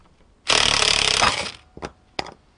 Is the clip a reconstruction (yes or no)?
no